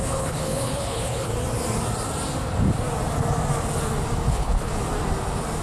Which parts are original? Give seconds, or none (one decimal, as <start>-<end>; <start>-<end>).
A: 1.3-4.3; 4.7-5.6